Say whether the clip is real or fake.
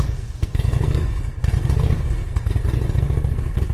fake